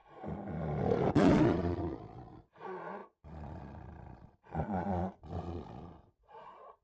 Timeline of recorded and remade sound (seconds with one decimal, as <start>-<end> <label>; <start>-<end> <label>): 0.0-1.1 recorded; 1.1-6.8 remade

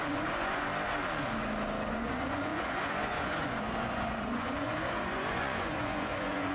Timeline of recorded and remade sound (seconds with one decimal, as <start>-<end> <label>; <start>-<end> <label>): 0.0-0.7 remade; 0.7-1.9 recorded; 1.9-6.5 remade